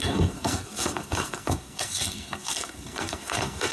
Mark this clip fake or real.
fake